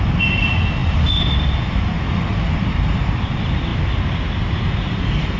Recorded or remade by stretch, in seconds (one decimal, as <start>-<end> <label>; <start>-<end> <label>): 0.0-0.8 recorded; 0.8-3.3 remade; 3.3-5.4 recorded